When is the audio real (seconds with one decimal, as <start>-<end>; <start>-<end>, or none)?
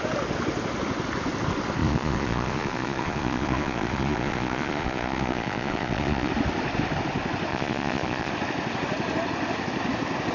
0.0-1.8; 6.3-7.5; 8.3-10.3